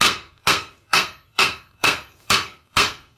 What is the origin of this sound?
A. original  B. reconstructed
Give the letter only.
B